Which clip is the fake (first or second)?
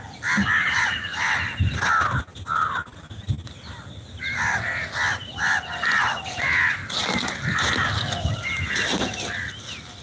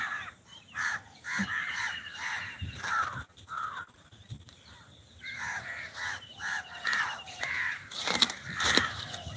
second